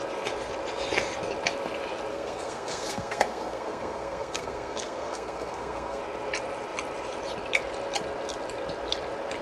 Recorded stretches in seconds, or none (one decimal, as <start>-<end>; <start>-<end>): 0.0-2.1; 6.0-9.4